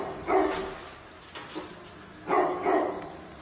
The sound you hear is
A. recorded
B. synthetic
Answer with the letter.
A